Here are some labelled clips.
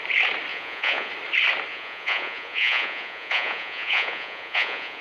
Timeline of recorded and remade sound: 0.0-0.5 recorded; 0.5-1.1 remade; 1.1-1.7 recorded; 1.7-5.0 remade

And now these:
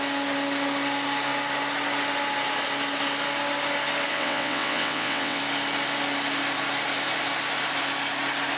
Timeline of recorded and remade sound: 0.0-4.1 recorded; 4.1-5.4 remade; 5.4-8.6 recorded

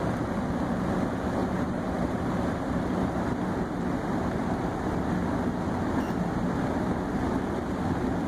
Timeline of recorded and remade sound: 0.0-1.4 recorded; 1.4-5.0 remade; 5.0-8.3 recorded